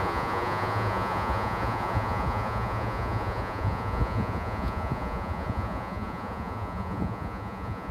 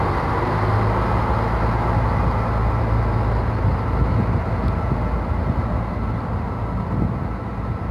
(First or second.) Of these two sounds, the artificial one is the first